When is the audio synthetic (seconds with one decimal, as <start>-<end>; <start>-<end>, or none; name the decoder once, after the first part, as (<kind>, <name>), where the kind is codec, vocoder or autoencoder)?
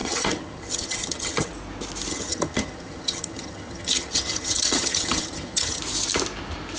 0.0-1.5 (vocoder, HiFi-GAN); 2.1-5.8